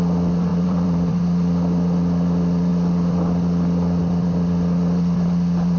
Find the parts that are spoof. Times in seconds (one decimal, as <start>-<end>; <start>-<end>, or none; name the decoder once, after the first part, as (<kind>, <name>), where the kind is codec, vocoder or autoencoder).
0.5-1.1 (vocoder, BigVGAN v2)